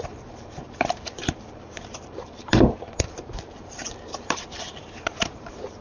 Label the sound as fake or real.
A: fake